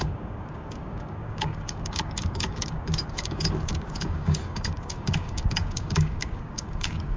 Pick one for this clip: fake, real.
fake